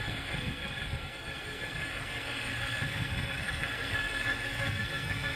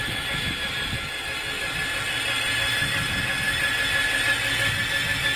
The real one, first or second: second